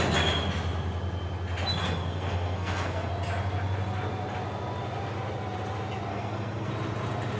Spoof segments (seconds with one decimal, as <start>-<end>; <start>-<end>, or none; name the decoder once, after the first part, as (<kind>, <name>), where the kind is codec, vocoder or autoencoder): 1.8-3.1 (codec, SNAC); 6.1-6.7